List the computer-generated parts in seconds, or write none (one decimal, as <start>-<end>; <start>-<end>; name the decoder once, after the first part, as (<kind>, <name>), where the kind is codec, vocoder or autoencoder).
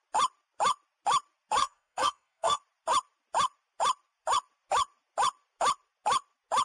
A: 1.6-2.6 (codec, SNAC)